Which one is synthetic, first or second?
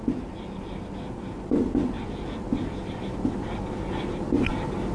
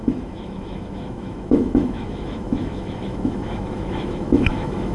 second